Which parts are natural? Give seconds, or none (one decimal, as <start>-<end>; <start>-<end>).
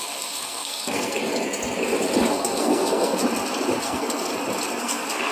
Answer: 1.2-2.3; 3.2-3.8; 4.3-4.8